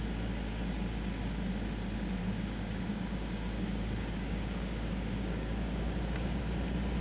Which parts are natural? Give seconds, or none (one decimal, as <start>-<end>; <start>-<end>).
0.0-2.2; 6.4-7.0